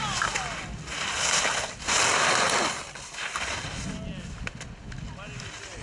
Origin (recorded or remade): recorded